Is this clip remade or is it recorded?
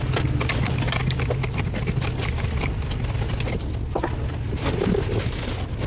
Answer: recorded